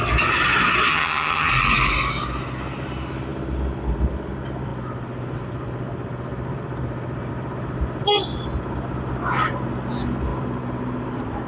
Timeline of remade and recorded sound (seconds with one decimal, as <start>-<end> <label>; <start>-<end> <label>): 0.0-0.9 recorded; 0.9-1.5 remade; 1.5-11.5 recorded